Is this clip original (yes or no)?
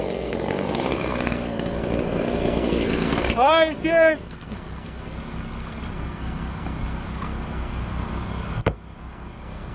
no